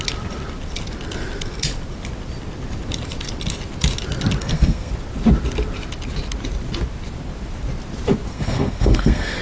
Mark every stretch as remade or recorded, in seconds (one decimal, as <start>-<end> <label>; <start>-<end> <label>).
0.0-4.4 recorded; 4.4-4.9 remade; 4.9-8.3 recorded; 8.3-9.4 remade